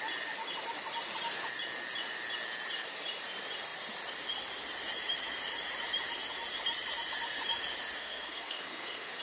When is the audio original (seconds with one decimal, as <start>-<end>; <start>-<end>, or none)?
0.0-8.0